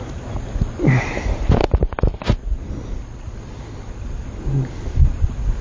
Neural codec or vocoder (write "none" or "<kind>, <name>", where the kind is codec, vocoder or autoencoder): none